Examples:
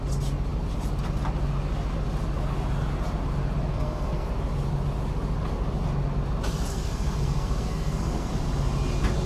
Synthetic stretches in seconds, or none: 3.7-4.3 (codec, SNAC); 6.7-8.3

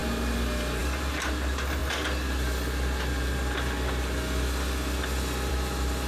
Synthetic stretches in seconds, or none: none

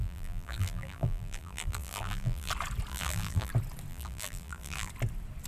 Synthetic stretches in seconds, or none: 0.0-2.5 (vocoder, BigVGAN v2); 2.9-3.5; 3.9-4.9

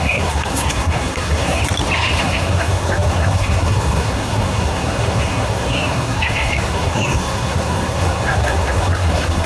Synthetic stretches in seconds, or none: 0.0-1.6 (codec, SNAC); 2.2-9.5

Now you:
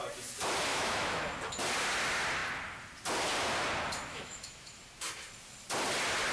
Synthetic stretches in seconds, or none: 0.7-1.2 (autoencoder, DAC-VAE); 4.1-4.8